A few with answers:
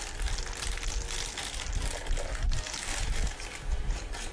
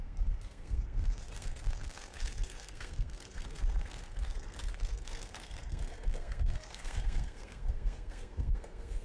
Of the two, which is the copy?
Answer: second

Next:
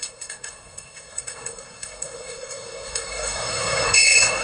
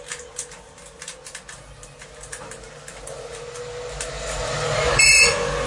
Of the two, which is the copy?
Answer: first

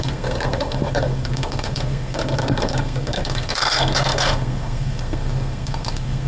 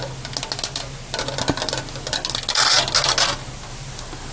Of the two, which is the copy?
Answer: first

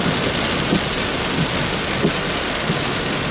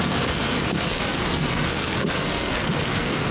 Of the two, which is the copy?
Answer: second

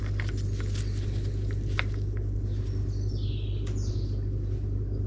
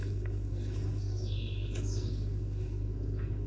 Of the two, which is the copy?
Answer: second